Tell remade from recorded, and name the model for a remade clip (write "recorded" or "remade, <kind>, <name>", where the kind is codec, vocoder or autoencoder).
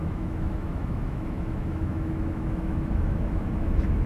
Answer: remade, autoencoder, DAC-VAE